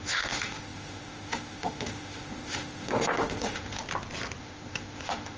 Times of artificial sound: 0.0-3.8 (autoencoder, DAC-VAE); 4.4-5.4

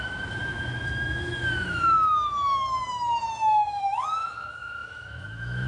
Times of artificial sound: 0.0-5.7 (autoencoder, DAC-VAE)

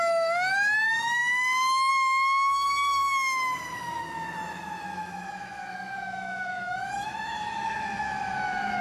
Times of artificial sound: 0.0-8.8 (autoencoder, DAC-VAE)

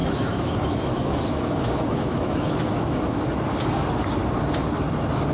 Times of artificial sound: 0.0-3.2 (autoencoder, DAC-VAE)

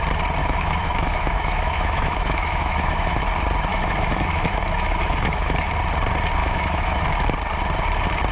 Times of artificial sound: 0.4-3.2 (autoencoder, DAC-VAE); 3.7-5.7; 6.4-7.0

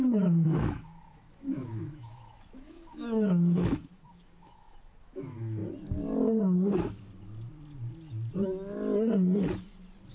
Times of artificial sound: 0.0-5.6 (autoencoder, DAC-VAE)